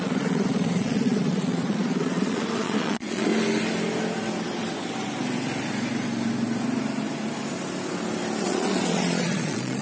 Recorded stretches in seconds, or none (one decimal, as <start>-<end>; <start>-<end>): 3.3-8.4